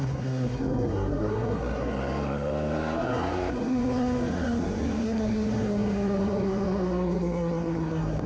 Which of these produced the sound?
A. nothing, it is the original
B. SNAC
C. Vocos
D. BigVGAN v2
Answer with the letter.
B